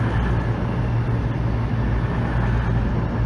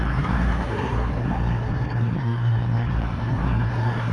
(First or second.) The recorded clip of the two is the first